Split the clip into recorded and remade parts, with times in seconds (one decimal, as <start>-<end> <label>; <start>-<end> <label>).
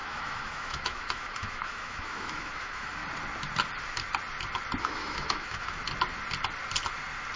0.0-3.0 remade; 3.0-4.8 recorded; 4.8-5.8 remade; 5.8-7.4 recorded